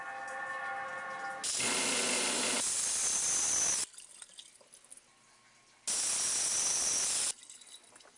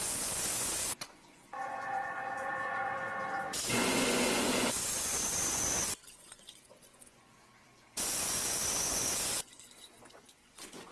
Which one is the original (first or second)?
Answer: first